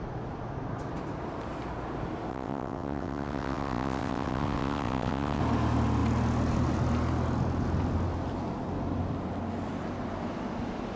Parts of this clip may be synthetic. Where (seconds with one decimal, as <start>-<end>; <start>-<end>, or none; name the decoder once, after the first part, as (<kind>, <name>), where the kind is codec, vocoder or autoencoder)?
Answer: 2.3-5.4 (vocoder, WaveNeXt)